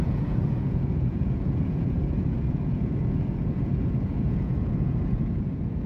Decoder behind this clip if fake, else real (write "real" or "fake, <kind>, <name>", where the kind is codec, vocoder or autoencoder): fake, vocoder, Vocos